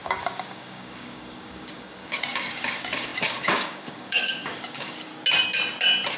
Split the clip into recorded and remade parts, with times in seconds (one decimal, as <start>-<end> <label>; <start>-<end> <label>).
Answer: 0.0-5.1 remade; 5.1-6.2 recorded